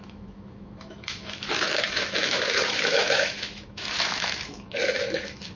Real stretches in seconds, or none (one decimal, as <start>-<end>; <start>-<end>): none